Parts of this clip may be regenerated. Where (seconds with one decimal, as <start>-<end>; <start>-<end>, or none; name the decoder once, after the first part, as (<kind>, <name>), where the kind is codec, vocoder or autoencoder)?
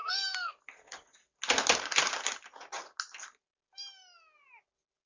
0.0-0.6 (codec, SNAC)